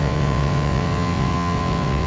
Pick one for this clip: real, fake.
fake